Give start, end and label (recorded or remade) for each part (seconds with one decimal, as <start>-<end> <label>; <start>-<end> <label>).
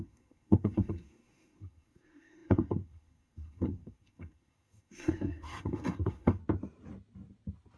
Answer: 0.0-6.4 remade; 6.4-7.8 recorded